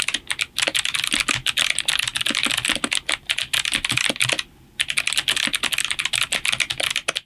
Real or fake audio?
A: real